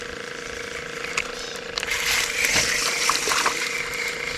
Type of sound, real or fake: fake